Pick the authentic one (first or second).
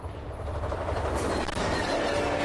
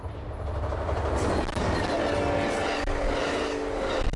second